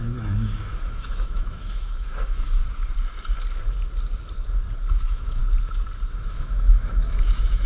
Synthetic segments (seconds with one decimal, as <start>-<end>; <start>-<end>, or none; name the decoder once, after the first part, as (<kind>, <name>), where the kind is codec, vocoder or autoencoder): 0.0-2.6 (autoencoder, DAC-VAE); 4.9-5.4; 6.2-7.7